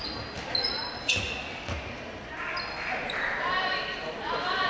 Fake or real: real